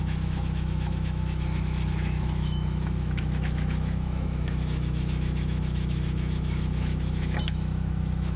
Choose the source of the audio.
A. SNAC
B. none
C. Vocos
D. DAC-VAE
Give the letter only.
D